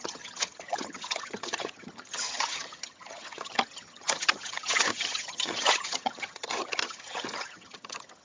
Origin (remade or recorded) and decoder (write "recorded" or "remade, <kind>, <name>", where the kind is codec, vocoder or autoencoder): remade, vocoder, HiFi-GAN